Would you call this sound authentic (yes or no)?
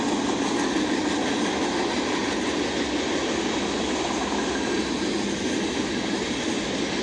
yes